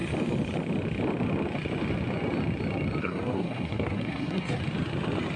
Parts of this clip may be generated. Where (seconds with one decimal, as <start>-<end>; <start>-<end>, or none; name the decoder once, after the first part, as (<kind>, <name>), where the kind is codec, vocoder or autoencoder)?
3.0-4.6 (codec, SNAC)